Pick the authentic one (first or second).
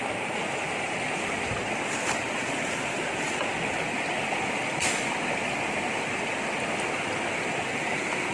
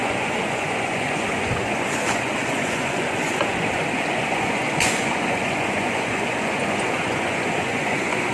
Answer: first